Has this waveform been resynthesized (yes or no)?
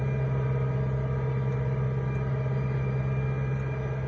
no